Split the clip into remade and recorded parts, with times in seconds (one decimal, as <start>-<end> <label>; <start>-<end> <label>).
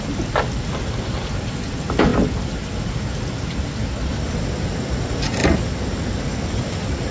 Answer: 0.0-7.1 recorded